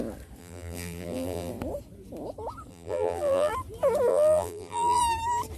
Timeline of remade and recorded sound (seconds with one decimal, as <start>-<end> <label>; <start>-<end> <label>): 0.0-0.4 recorded; 0.4-1.5 remade; 1.5-2.7 recorded; 2.7-3.5 remade; 3.5-4.1 recorded; 4.1-5.0 remade; 5.0-5.6 recorded